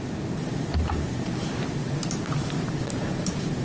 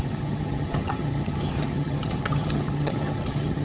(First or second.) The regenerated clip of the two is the second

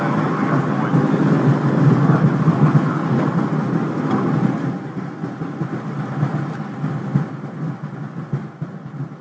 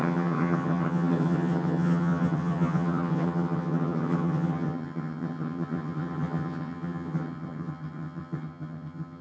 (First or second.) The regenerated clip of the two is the second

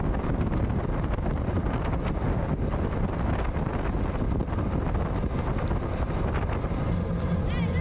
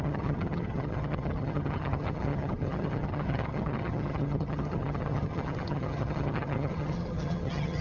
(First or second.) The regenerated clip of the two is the second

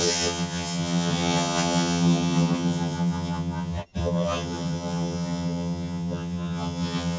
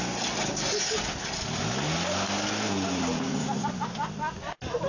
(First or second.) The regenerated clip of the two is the first